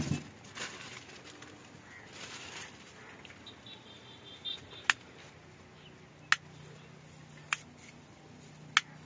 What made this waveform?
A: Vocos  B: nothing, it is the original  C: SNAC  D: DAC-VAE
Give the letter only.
B